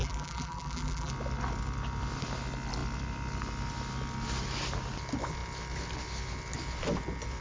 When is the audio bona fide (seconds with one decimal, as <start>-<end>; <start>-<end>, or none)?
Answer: 1.1-7.4